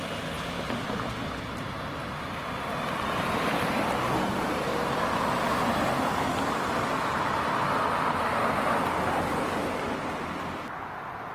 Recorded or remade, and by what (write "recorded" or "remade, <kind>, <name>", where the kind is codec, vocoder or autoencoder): recorded